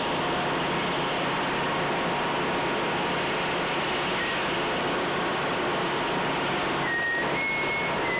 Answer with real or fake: real